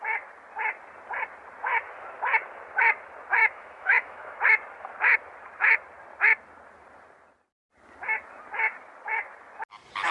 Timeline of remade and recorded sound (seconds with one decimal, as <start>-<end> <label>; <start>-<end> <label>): 0.0-3.3 recorded; 3.3-4.4 remade; 4.4-10.1 recorded